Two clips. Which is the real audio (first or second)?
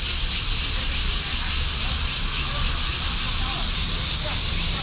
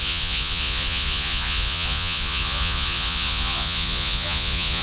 first